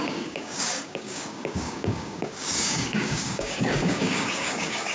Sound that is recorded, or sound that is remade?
remade